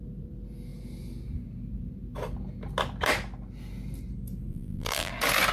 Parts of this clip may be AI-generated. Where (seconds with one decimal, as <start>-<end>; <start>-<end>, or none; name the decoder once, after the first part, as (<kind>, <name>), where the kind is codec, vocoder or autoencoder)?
4.5-5.1 (vocoder, BigVGAN v2)